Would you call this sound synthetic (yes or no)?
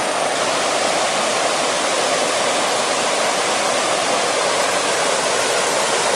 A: no